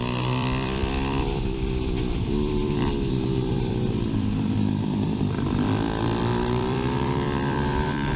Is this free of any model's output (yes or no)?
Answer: no